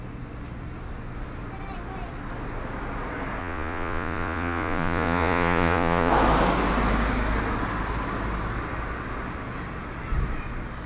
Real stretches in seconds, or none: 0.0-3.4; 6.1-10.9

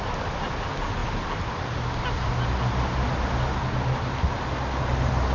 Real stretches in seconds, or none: 0.0-5.3

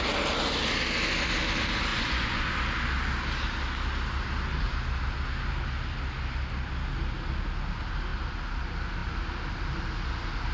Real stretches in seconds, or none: 0.0-1.9; 2.5-10.5

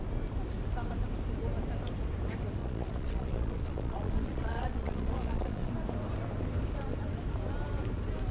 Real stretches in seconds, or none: 0.0-2.6; 5.7-8.3

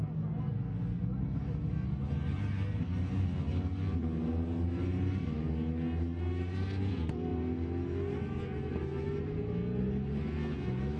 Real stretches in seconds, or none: 0.0-11.0